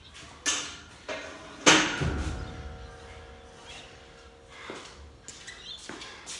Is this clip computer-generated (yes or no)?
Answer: no